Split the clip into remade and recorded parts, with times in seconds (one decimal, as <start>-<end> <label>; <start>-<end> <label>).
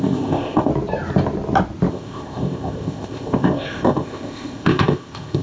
0.0-0.7 remade; 0.7-1.9 recorded; 1.9-5.4 remade